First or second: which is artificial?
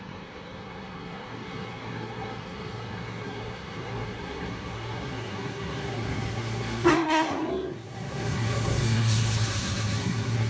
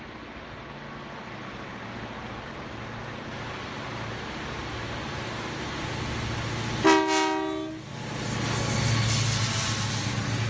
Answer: first